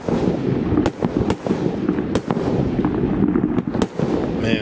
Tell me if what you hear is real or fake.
real